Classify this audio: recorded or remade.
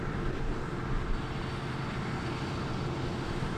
recorded